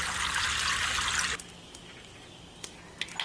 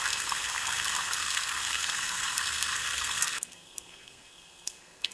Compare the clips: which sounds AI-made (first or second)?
second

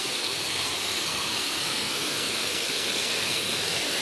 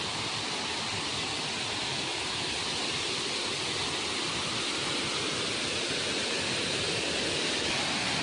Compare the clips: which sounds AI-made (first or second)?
first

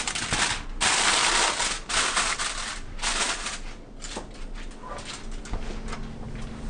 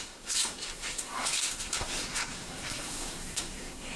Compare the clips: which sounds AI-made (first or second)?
second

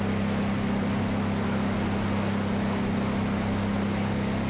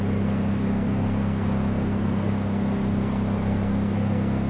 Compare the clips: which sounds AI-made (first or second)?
second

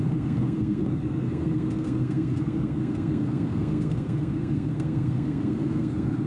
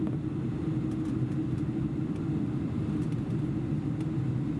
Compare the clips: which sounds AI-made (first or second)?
first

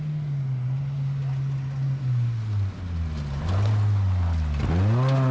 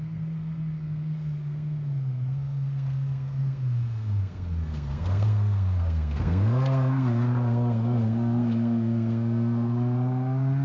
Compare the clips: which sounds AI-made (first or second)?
second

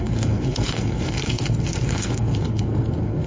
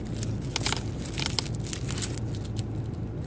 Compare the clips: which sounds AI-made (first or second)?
first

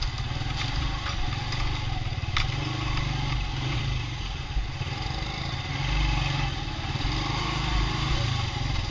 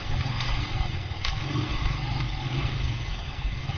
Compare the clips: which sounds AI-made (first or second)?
second